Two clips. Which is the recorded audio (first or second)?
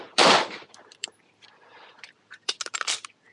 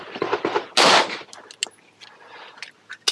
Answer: second